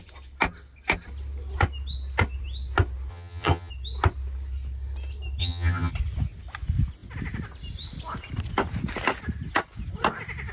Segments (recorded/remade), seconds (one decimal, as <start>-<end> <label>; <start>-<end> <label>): 0.0-3.1 recorded; 3.1-3.7 remade; 3.7-5.4 recorded; 5.4-5.9 remade; 5.9-10.5 recorded